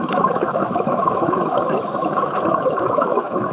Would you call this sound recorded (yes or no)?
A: no